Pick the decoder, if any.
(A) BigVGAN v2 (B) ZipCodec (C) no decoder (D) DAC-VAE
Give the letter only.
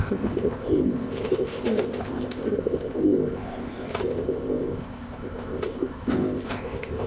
B